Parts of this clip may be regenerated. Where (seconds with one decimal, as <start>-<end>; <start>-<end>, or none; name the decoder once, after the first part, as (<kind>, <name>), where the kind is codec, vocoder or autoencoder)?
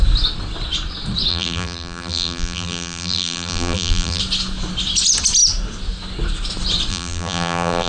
1.3-4.2 (vocoder, BigVGAN v2); 6.9-7.9